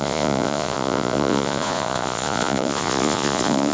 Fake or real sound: fake